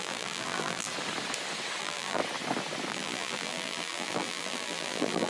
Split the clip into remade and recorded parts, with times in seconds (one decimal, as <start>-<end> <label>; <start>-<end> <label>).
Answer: 0.0-0.9 remade; 0.9-1.8 recorded; 1.8-2.2 remade; 2.2-2.9 recorded; 2.9-5.3 remade